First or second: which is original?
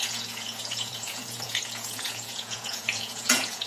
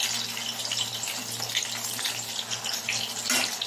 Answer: second